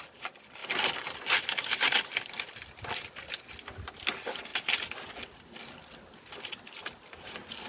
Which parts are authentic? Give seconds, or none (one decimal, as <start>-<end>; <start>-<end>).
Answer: 0.0-7.7